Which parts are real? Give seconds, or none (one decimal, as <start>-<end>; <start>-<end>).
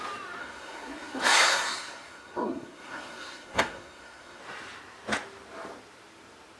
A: 0.0-0.4; 4.4-6.6